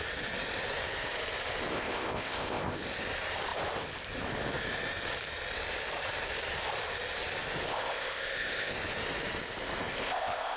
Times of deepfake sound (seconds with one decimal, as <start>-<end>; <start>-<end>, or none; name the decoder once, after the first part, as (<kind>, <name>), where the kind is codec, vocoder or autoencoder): 1.7-2.8 (codec, ZipCodec); 7.7-8.8; 9.9-10.6

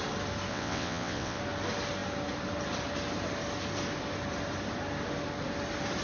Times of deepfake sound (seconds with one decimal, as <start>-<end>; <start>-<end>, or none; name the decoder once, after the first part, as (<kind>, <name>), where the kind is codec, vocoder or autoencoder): 0.5-1.4 (vocoder, WaveNeXt)

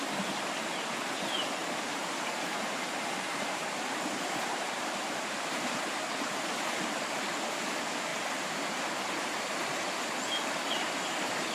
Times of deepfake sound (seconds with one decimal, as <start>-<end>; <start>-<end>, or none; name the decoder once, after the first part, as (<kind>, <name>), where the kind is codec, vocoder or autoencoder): 1.6-6.5 (vocoder, BigVGAN v2)

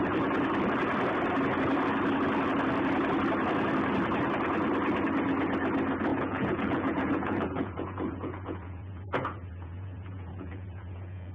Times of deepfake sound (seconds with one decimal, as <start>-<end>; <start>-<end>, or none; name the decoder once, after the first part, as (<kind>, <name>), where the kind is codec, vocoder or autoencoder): 6.1-11.3 (vocoder, Vocos)